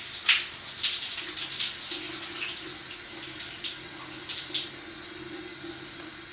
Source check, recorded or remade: recorded